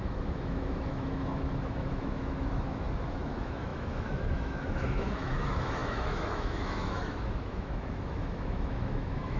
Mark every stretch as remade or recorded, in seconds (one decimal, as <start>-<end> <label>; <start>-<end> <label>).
0.0-9.4 remade